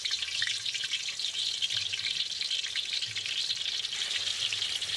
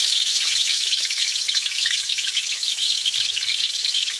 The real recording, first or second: first